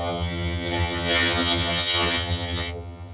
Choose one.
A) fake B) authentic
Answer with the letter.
A